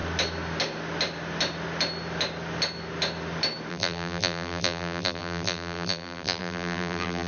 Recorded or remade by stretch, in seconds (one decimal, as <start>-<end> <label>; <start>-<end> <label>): 0.0-3.7 recorded; 3.7-7.3 remade